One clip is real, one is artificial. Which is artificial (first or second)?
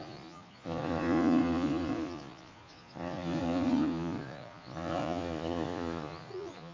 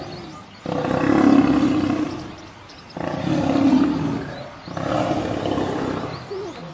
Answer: first